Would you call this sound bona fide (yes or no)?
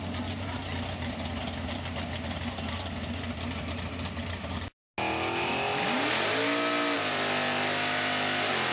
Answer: yes